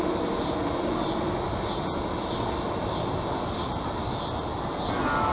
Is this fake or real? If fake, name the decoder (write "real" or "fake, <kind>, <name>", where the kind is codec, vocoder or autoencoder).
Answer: real